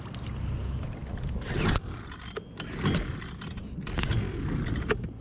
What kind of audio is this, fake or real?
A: real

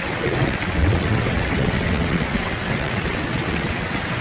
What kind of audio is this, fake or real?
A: fake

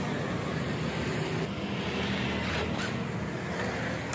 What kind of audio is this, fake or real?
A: real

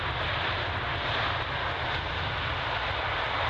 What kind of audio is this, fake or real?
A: real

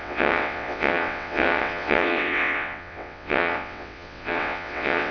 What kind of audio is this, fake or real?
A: fake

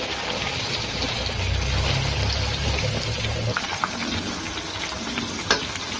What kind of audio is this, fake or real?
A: real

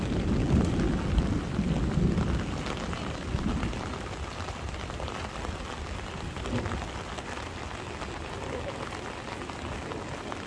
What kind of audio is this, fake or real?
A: real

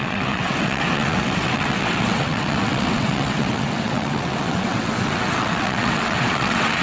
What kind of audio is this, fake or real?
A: fake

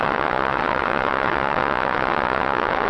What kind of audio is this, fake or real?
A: fake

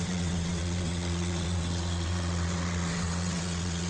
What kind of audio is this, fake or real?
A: fake